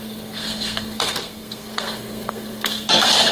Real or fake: fake